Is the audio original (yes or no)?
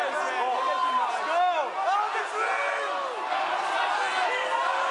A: yes